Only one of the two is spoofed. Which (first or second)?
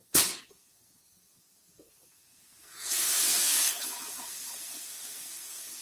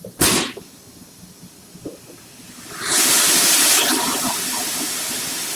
first